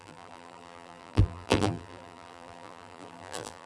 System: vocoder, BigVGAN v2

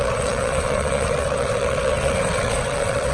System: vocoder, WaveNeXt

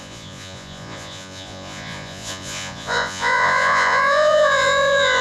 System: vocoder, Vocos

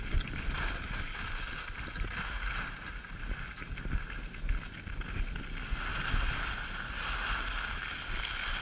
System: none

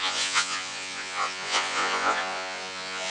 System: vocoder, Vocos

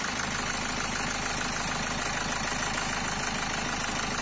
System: none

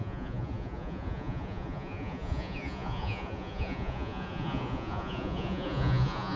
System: vocoder, Vocos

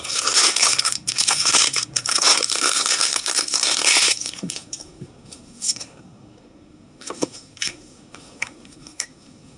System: codec, SNAC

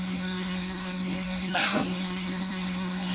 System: codec, SNAC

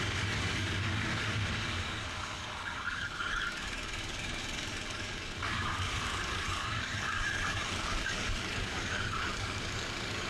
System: codec, DAC